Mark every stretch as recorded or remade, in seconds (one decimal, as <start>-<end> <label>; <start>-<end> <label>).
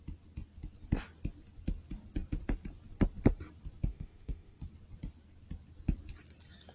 0.0-3.9 recorded; 3.9-4.6 remade; 4.6-6.7 recorded